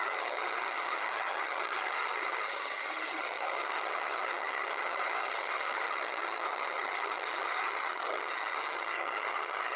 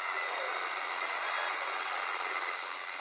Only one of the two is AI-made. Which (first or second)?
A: first